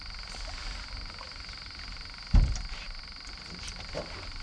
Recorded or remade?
recorded